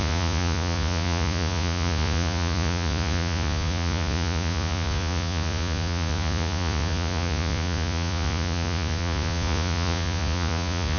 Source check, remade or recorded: remade